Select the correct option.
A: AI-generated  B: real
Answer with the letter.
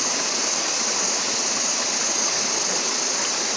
B